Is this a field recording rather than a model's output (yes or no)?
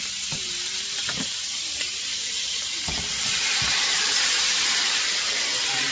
no